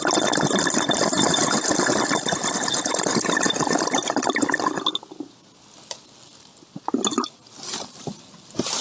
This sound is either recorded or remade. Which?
recorded